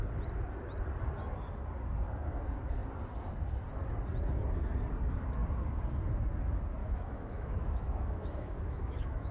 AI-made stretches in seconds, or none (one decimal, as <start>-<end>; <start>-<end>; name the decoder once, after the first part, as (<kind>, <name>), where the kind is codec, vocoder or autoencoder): 6.8-9.3 (autoencoder, DAC-VAE)